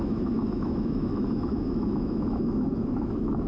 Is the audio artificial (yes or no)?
yes